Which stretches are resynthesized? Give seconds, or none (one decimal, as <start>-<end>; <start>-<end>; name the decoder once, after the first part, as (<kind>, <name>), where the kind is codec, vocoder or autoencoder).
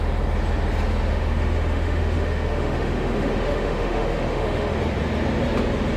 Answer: 1.1-4.7 (autoencoder, DAC-VAE)